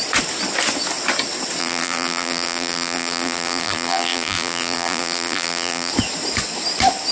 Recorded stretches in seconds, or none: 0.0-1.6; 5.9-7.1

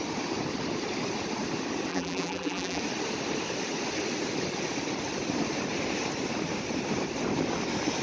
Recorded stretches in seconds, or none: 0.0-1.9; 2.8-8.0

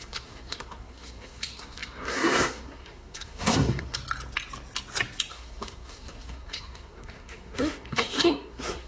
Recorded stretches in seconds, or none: 4.0-5.3